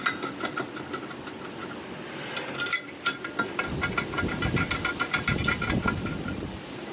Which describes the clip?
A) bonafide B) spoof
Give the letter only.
A